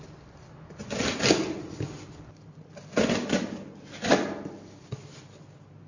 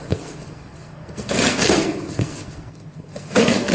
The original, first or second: first